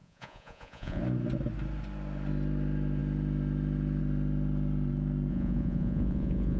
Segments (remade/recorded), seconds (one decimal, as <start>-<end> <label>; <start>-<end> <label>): 0.0-1.0 remade; 1.0-5.3 recorded; 5.3-6.6 remade